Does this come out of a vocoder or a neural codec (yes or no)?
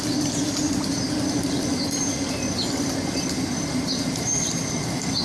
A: no